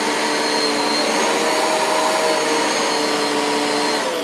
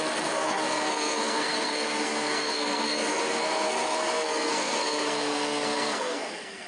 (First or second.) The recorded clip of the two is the first